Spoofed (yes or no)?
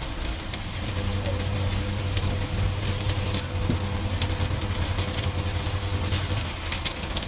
no